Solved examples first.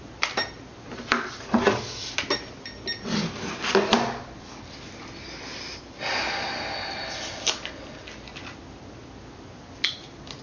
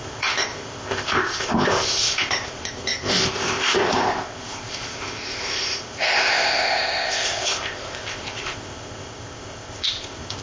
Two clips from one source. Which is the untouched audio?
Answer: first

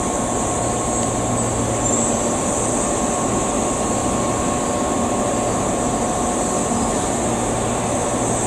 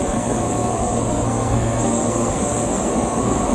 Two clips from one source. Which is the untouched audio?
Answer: first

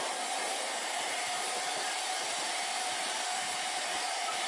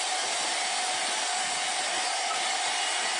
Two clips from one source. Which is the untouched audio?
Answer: second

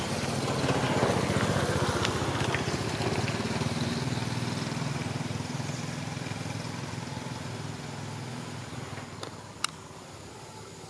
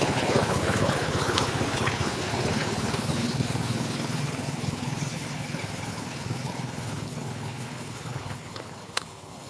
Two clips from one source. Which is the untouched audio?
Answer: first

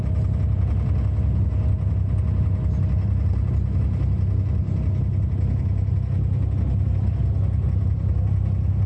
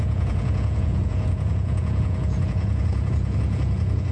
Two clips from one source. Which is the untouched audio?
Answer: first